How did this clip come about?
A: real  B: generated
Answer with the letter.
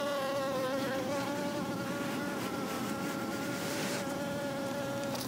B